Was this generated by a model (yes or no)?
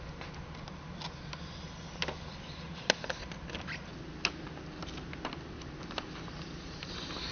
no